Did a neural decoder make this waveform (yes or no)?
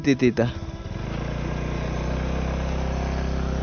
no